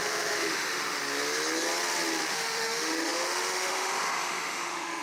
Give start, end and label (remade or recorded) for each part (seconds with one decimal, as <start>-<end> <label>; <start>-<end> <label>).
0.0-1.0 remade; 1.0-2.3 recorded; 2.3-5.0 remade